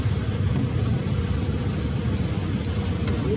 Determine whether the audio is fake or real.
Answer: real